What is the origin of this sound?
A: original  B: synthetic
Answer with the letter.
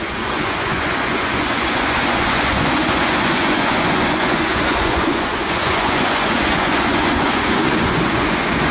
B